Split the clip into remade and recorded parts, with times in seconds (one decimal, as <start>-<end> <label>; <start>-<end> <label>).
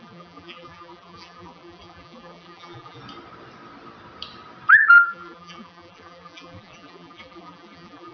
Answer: 0.0-3.0 remade; 3.0-5.0 recorded; 5.0-8.1 remade